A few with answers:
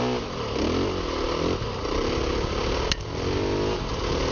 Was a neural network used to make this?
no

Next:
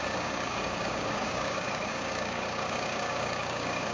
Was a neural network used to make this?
yes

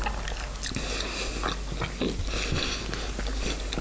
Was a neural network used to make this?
no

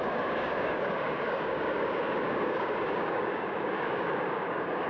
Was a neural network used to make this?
yes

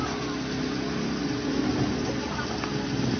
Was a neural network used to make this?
no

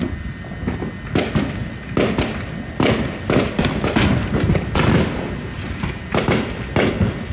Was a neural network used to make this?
no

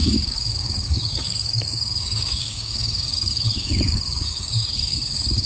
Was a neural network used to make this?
yes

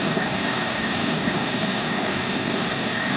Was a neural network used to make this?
yes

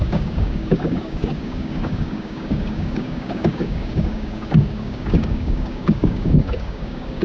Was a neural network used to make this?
yes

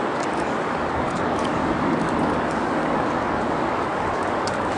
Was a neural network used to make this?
yes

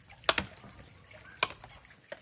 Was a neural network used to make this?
no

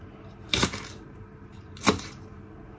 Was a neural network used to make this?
no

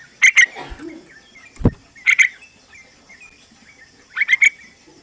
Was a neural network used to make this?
no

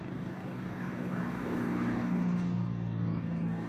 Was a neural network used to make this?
yes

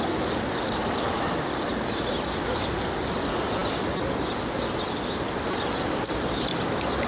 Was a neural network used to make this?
no